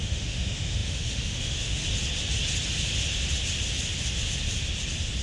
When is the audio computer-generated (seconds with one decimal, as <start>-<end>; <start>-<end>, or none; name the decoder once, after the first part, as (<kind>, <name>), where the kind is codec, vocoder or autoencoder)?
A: 0.0-1.8 (autoencoder, DAC-VAE)